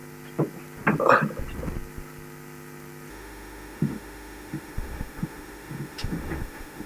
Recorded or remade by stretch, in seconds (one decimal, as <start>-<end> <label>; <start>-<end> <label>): 0.0-3.1 recorded; 3.1-6.9 remade